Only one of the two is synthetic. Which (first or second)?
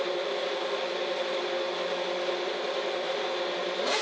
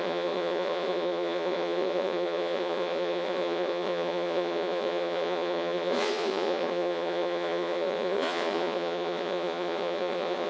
second